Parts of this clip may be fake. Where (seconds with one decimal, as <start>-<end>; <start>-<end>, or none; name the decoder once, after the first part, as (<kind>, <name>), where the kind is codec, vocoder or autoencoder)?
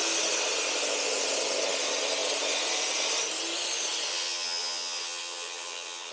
4.1-6.1 (vocoder, HiFi-GAN)